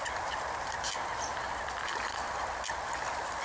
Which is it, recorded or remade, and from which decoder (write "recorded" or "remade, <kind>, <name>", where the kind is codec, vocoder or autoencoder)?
recorded